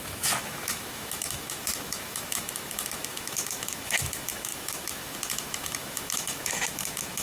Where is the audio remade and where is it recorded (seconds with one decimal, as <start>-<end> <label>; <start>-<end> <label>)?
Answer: 0.0-7.2 remade